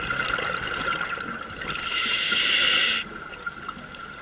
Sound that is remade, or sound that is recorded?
recorded